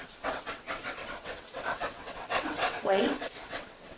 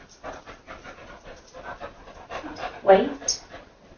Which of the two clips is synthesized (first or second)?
first